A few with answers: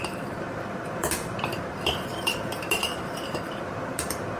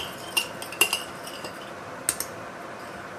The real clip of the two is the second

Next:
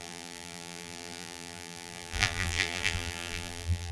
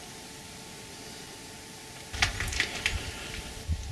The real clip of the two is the second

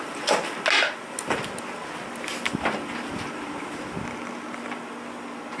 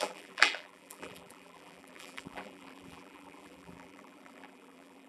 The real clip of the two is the first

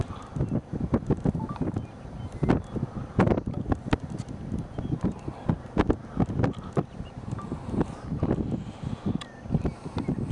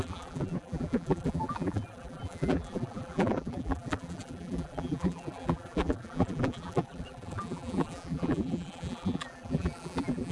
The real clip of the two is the first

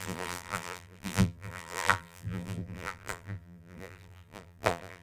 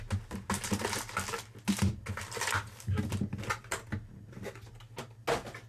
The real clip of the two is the second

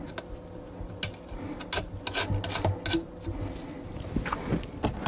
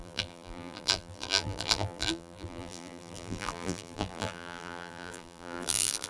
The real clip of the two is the first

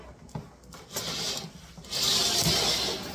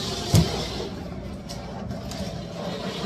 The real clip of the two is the first